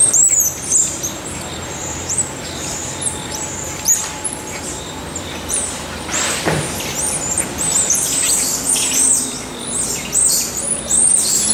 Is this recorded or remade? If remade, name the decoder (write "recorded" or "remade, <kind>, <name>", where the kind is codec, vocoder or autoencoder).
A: remade, vocoder, BigVGAN v2